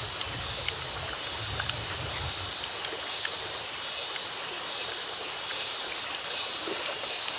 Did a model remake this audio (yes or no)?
no